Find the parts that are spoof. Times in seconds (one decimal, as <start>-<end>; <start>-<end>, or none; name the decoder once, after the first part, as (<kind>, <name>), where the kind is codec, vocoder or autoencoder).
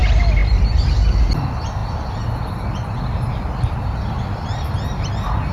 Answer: 0.4-1.2 (vocoder, BigVGAN v2)